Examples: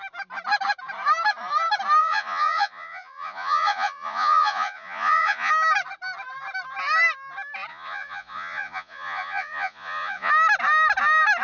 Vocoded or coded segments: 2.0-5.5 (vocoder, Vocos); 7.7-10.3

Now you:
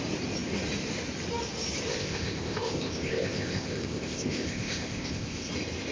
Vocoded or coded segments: 2.0-5.5 (codec, ZipCodec)

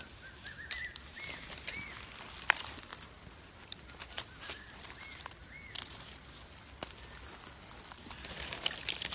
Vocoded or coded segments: none

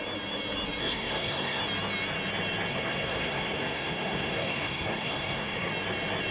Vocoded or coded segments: 0.8-1.6 (codec, SNAC); 2.7-5.7

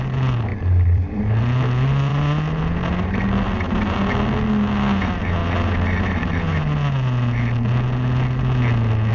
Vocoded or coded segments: 0.5-1.4 (vocoder, BigVGAN v2)

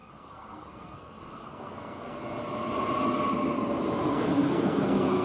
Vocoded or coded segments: 0.0-2.2 (codec, SNAC); 4.1-5.2

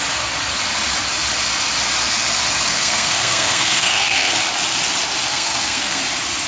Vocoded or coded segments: 2.7-4.4 (codec, SNAC); 5.3-6.0